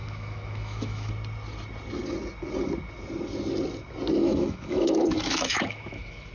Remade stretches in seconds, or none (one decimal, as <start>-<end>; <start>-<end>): 0.0-1.1; 4.2-6.3